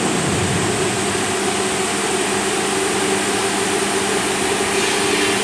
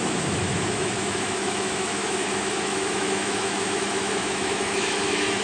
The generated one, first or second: second